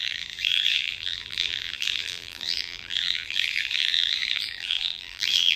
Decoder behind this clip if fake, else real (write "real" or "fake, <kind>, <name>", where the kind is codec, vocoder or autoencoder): fake, vocoder, BigVGAN v2